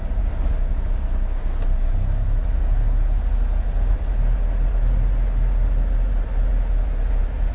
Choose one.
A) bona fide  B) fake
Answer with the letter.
A